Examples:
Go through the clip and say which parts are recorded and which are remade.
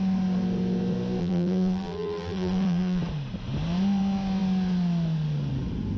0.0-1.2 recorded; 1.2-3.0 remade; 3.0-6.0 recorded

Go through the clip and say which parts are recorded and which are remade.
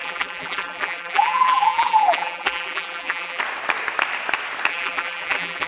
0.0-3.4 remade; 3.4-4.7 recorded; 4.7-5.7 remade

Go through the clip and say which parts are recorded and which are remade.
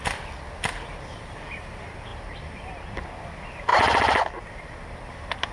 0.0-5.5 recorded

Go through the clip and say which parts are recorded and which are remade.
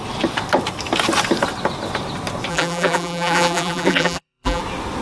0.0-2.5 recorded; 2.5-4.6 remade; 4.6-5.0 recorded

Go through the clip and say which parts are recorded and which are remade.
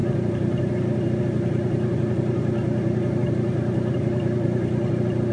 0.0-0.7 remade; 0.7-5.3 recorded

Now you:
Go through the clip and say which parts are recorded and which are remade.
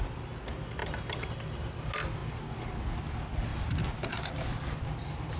0.0-0.8 recorded; 0.8-1.3 remade; 1.3-3.5 recorded; 3.5-4.3 remade; 4.3-5.4 recorded